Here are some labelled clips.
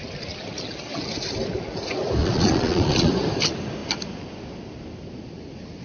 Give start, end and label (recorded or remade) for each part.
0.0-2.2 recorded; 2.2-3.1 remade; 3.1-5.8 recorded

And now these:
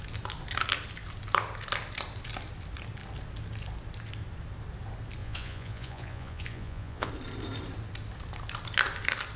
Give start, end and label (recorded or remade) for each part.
0.0-5.2 recorded; 5.2-7.1 remade; 7.1-9.4 recorded

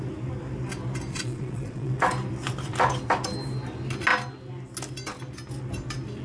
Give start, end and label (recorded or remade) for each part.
0.0-1.1 recorded; 1.1-2.0 remade; 2.0-6.2 recorded

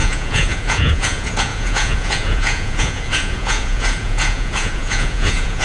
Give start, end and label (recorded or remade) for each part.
0.0-5.6 remade

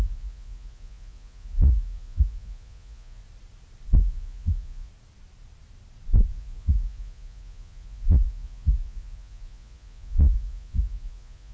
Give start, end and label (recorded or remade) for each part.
0.0-3.2 remade; 3.2-4.0 recorded; 4.0-4.9 remade; 4.9-6.3 recorded; 6.3-11.5 remade

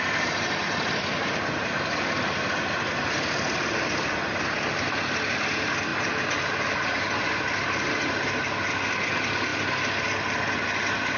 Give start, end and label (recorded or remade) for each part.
0.0-11.2 recorded

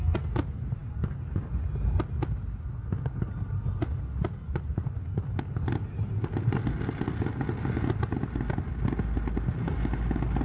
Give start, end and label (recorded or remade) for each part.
0.0-10.4 recorded